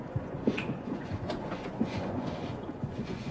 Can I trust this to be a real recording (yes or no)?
no